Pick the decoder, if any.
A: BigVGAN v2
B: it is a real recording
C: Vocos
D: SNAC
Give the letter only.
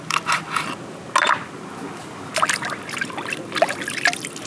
B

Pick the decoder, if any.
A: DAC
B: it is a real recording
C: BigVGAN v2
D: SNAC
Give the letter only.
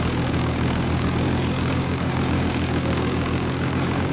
A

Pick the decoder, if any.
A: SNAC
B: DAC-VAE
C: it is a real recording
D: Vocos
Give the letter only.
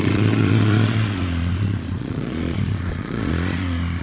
D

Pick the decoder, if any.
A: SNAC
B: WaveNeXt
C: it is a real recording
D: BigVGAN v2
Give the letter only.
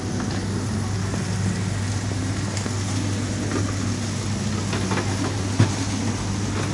C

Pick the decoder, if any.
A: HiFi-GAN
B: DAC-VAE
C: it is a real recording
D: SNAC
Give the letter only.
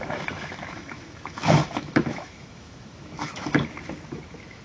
B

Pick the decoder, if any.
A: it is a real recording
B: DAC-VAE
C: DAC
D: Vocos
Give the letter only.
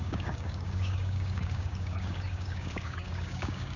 C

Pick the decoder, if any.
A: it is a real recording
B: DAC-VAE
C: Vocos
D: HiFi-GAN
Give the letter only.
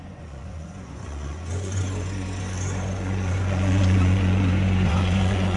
C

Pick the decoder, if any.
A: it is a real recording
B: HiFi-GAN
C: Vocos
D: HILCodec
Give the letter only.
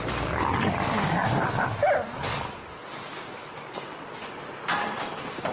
A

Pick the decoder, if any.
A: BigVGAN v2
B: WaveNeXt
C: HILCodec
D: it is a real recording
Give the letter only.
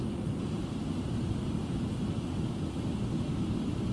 D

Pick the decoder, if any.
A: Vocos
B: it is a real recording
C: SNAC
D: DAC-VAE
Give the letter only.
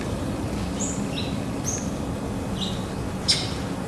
B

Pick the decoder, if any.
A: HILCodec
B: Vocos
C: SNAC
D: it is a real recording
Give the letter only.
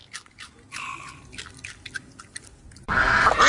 D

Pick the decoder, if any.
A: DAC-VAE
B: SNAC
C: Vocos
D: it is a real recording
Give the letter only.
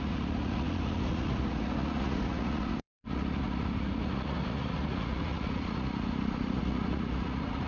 C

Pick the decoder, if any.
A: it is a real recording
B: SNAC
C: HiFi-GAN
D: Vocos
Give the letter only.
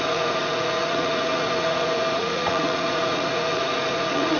D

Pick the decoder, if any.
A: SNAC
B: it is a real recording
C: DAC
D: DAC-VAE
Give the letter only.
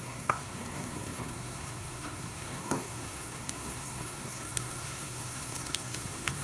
A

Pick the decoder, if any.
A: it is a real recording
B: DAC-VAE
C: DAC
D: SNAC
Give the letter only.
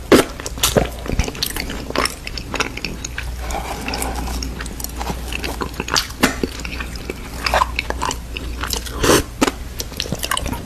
A